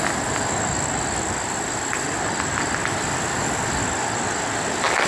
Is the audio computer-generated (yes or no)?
no